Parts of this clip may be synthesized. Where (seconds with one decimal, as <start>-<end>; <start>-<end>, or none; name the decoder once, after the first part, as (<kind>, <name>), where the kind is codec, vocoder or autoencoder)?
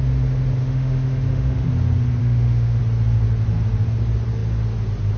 0.6-1.7 (autoencoder, DAC-VAE); 2.2-2.8